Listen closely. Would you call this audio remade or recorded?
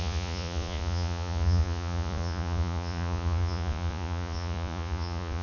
remade